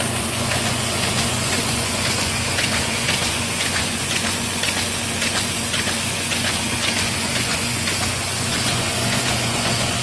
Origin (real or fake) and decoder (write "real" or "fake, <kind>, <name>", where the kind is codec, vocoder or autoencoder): fake, vocoder, Vocos